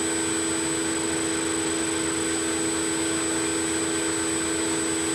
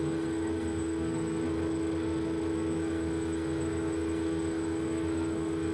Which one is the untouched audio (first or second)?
first